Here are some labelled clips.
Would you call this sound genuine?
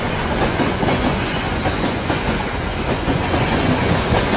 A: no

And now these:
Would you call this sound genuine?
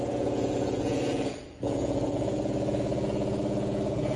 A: no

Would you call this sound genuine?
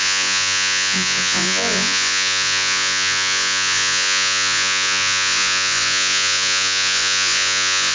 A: no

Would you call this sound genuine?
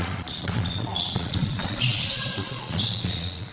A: no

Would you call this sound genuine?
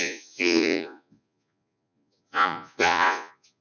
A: no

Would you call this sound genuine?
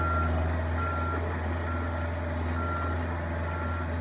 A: yes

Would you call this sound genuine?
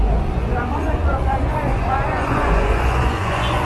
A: no